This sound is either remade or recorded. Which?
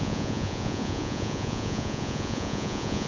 remade